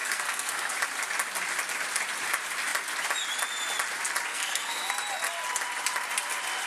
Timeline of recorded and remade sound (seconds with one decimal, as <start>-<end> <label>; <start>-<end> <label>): 0.0-0.7 remade; 0.7-4.3 recorded; 4.3-4.9 remade; 4.9-6.7 recorded